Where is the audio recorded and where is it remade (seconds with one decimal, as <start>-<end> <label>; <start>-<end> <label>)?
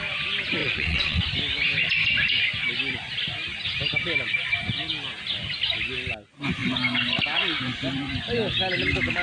0.0-0.6 recorded; 0.6-1.2 remade; 1.2-9.2 recorded